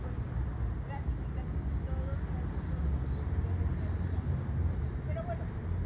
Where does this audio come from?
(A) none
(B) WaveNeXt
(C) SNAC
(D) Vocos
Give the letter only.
A